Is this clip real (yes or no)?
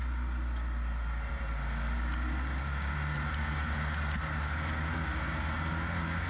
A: yes